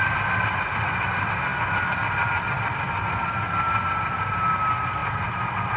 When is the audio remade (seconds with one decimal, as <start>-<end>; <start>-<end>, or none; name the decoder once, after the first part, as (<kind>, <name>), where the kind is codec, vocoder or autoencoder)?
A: none